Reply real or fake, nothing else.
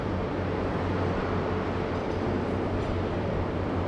fake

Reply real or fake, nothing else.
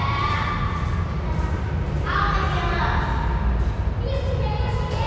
real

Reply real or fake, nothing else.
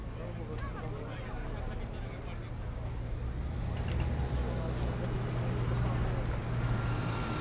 real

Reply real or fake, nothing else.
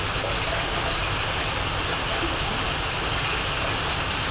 real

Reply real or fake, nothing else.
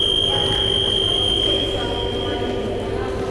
real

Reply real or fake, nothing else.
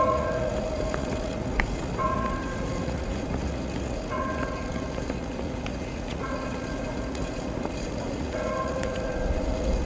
fake